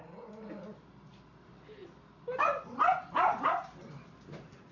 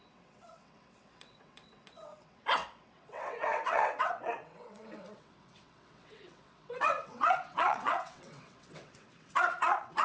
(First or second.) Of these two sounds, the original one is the first